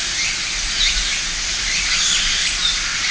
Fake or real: real